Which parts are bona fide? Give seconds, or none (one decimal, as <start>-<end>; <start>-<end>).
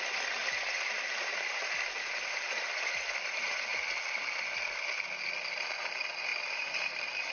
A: 0.0-0.4; 3.1-6.3